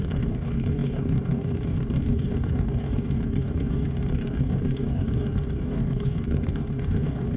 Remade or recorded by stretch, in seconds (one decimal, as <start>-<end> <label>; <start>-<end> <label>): 0.0-7.4 remade